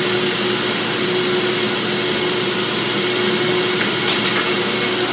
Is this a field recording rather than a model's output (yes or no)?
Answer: yes